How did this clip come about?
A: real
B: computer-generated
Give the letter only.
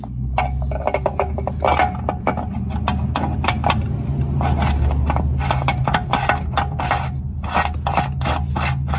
A